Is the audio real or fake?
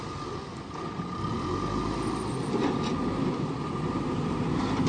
real